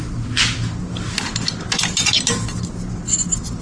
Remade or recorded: recorded